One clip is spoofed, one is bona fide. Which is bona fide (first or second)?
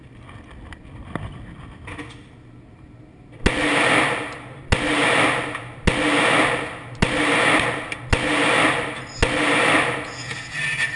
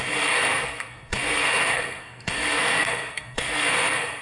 first